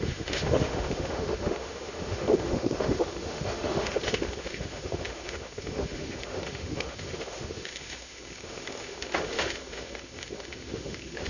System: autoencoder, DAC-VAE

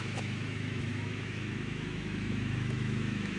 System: autoencoder, DAC-VAE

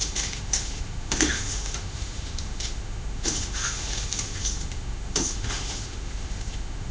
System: autoencoder, DAC-VAE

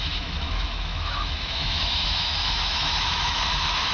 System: autoencoder, DAC-VAE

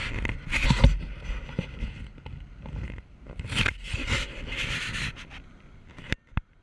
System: none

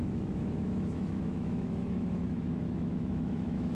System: autoencoder, DAC-VAE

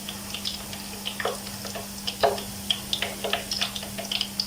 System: none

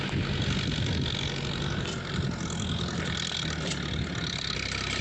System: none